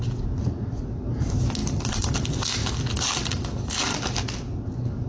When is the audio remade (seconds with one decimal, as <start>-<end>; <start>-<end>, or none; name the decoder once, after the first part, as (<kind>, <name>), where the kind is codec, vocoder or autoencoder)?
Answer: none